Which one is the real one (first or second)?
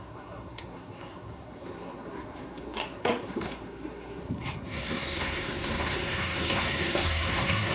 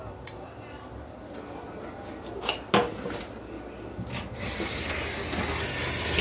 second